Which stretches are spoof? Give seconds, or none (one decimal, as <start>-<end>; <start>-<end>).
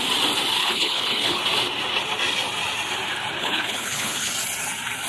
0.6-1.4; 3.4-4.3